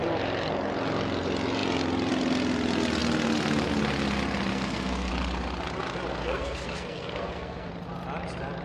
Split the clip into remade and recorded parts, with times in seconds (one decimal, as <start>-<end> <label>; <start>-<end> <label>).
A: 0.0-4.5 recorded; 4.5-5.1 remade; 5.1-6.1 recorded; 6.1-7.7 remade; 7.7-8.6 recorded